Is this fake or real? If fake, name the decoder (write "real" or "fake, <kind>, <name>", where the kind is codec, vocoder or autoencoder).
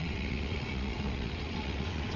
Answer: fake, vocoder, WaveNeXt